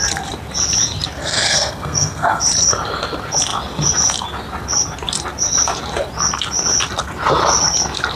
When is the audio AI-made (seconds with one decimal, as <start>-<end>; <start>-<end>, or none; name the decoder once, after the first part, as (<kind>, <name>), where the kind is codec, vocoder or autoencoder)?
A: 1.2-2.4 (codec, SNAC)